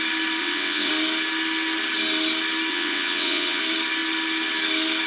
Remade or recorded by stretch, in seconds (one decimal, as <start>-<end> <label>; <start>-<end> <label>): 0.0-0.4 recorded; 0.4-0.9 remade; 0.9-2.7 recorded; 2.7-3.6 remade; 3.6-5.1 recorded